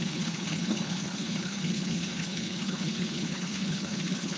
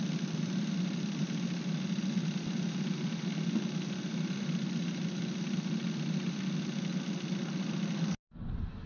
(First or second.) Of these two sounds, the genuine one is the second